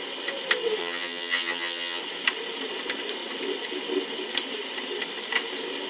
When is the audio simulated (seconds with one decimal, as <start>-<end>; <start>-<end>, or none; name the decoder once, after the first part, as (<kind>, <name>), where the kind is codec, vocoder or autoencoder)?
0.8-2.0 (vocoder, HiFi-GAN)